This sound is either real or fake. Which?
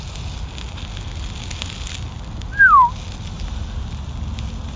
real